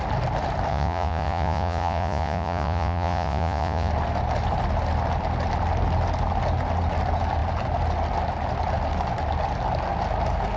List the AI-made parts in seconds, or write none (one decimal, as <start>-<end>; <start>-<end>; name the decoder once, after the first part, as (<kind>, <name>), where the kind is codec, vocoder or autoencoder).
0.7-3.9 (vocoder, Vocos)